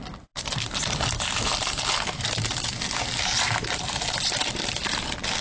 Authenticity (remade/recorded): recorded